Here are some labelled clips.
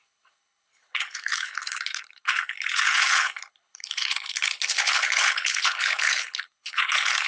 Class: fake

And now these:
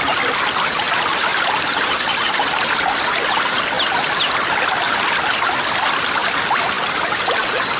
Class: real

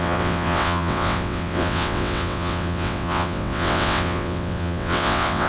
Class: fake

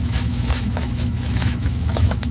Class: fake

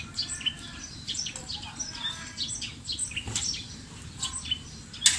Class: real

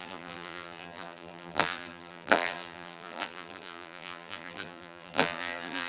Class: fake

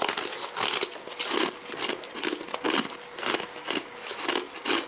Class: real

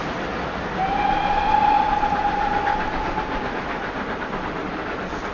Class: real